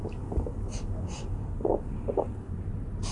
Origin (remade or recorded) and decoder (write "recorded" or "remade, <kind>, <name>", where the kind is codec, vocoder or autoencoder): recorded